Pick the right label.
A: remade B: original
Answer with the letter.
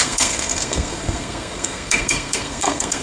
A